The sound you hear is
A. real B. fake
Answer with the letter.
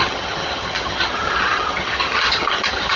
B